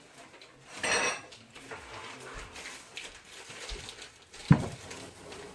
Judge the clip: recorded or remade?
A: recorded